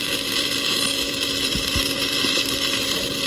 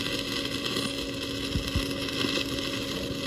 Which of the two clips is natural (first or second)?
second